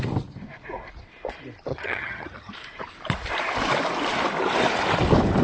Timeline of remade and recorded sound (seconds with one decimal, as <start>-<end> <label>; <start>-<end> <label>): 0.0-1.7 recorded; 1.7-2.5 remade; 2.5-5.4 recorded